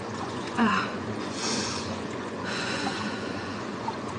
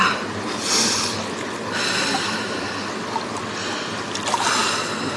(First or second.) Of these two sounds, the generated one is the first